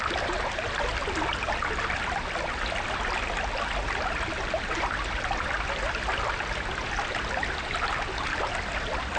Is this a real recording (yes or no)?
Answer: yes